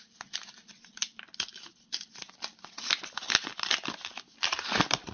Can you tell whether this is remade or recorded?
remade